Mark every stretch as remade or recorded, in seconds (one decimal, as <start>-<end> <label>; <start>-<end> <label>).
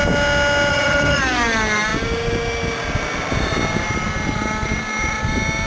0.0-0.7 recorded; 0.7-1.2 remade; 1.2-5.7 recorded